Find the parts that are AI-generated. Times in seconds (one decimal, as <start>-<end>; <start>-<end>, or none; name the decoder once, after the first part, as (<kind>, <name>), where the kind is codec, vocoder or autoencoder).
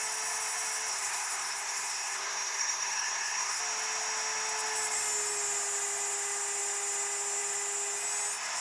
0.9-3.6 (codec, SNAC)